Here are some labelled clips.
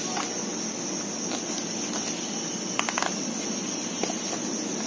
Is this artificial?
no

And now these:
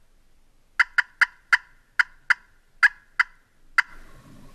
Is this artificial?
no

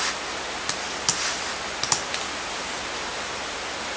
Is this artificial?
no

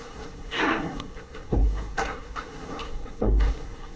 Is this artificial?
yes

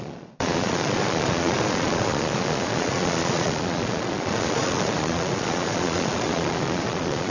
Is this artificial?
yes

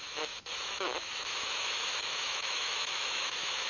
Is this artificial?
yes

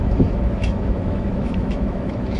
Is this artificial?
yes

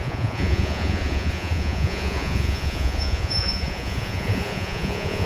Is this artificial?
yes